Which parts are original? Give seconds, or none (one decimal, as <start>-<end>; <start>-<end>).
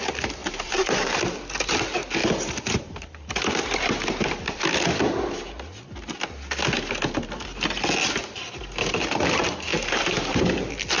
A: 0.0-0.4; 1.1-2.2; 3.5-11.0